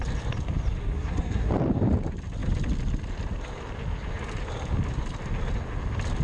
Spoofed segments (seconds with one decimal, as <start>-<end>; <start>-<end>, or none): 0.8-1.5